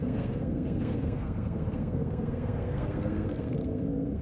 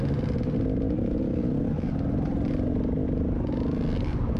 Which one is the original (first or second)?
second